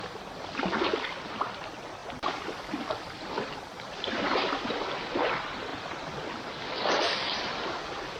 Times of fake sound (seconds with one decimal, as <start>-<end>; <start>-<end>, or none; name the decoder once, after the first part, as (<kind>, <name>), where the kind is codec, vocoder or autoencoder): 2.0-4.6 (vocoder, BigVGAN v2)